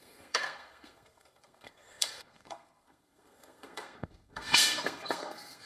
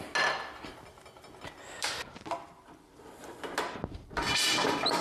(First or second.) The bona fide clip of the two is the second